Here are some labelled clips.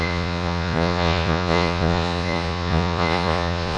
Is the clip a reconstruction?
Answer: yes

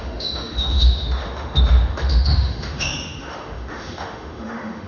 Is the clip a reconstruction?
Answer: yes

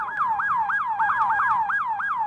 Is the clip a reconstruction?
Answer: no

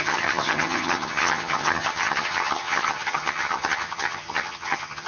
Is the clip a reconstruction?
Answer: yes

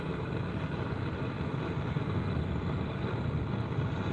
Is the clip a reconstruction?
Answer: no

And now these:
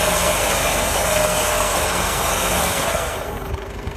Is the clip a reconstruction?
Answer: yes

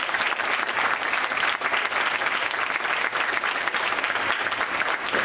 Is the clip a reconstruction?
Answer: no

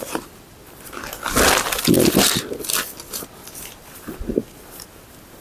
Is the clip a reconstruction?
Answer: no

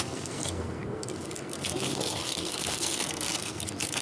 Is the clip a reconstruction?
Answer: yes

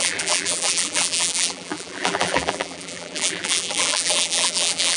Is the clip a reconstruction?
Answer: yes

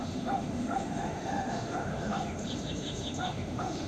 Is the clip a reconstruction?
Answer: yes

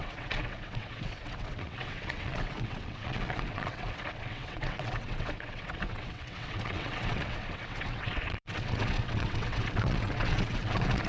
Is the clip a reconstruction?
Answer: yes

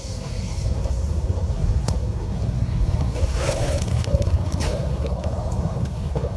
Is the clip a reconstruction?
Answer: yes